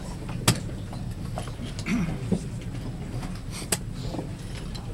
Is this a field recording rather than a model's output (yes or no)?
yes